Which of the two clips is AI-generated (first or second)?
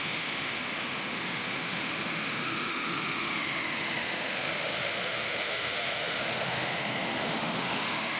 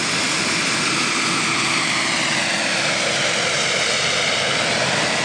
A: first